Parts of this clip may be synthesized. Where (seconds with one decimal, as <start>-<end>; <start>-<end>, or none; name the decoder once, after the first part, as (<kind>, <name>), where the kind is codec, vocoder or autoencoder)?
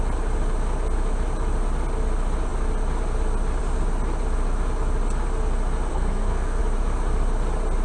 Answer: 5.9-6.6 (codec, SNAC)